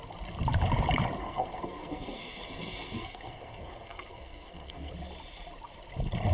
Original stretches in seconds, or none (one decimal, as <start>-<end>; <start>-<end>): 0.0-1.2; 4.9-6.3